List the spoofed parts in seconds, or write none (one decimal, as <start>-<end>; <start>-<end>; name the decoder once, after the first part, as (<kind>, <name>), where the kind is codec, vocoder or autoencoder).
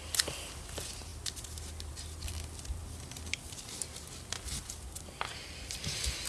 none